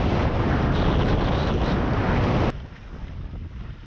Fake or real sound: real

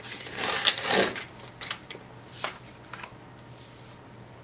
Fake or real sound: real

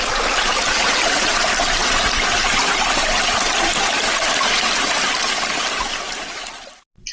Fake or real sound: real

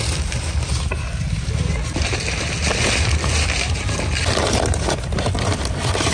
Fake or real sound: real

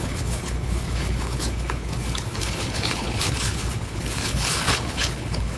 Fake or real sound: fake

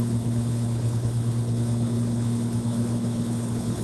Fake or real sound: fake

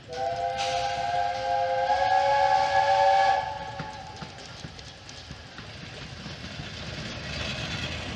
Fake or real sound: real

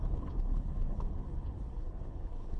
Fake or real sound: fake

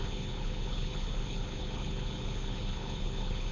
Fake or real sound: fake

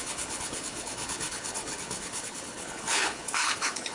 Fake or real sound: fake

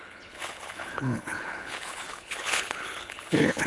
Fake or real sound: fake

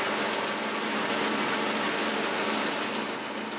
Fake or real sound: real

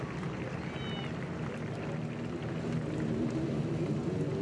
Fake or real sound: real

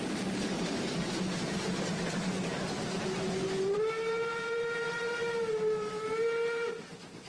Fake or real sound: real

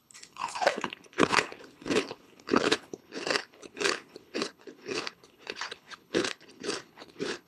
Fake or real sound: fake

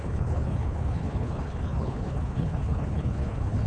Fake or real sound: fake